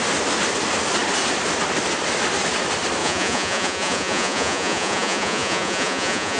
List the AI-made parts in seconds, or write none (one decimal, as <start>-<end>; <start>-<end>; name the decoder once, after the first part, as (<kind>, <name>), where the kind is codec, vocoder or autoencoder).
3.0-6.4 (vocoder, Vocos)

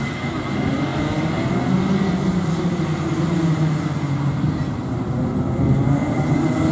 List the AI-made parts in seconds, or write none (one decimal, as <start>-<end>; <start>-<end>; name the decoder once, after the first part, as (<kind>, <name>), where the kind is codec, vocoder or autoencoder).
none

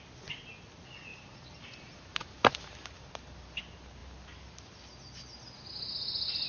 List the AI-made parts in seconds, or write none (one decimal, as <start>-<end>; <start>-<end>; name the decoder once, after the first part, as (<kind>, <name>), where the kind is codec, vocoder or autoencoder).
1.1-3.6 (vocoder, BigVGAN v2)

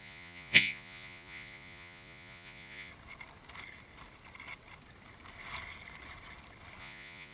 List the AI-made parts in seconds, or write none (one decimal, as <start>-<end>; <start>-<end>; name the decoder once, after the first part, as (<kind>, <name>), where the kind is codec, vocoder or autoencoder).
0.0-2.9 (vocoder, Vocos); 6.8-7.3

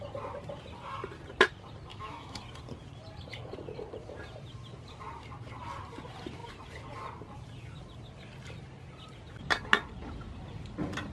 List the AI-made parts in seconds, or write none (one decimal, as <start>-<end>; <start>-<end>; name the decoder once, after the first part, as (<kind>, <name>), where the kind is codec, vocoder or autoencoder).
1.9-2.4 (autoencoder, DAC-VAE)

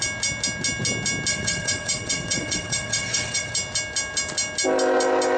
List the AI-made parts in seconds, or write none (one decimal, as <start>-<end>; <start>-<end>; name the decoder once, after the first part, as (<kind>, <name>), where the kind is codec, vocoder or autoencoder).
1.3-3.5 (vocoder, WaveNeXt)

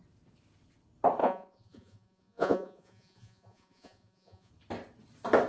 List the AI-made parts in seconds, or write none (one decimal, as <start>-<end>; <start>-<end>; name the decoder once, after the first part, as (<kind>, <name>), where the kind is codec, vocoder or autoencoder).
1.2-4.5 (vocoder, Vocos)

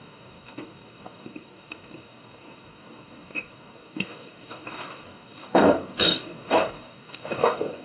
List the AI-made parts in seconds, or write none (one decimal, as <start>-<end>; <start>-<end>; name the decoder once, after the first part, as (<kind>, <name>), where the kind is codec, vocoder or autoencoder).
0.0-7.8 (codec, DAC)